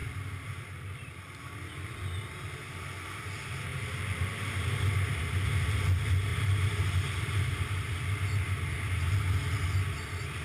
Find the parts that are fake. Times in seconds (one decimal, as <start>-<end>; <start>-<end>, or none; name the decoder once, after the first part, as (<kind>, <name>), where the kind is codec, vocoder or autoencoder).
3.7-4.5 (vocoder, BigVGAN v2); 6.3-7.9